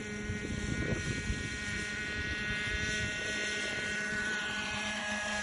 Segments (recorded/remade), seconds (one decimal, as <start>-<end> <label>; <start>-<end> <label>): 0.0-3.2 recorded; 3.2-5.4 remade